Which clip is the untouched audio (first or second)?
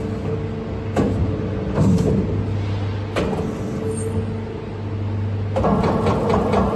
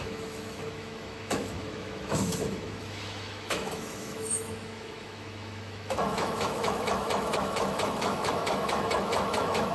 first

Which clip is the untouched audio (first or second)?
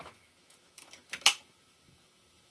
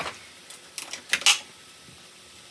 second